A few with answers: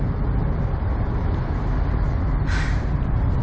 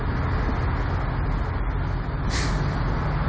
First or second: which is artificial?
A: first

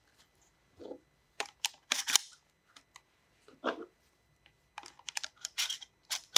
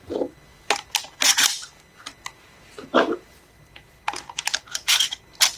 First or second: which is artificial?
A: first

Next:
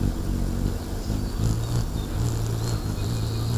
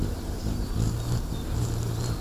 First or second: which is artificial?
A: second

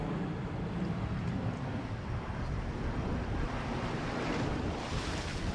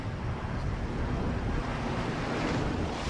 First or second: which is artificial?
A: first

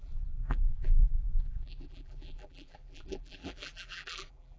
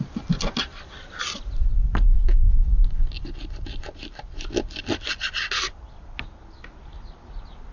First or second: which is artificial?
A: first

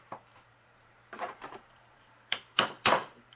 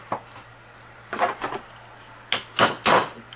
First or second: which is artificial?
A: first